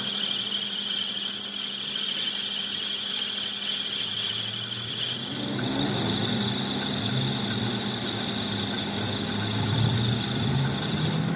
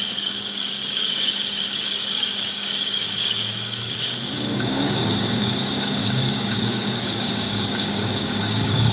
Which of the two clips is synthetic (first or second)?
second